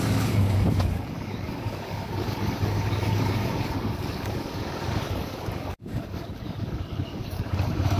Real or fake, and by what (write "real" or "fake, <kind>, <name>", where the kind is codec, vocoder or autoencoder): fake, codec, DAC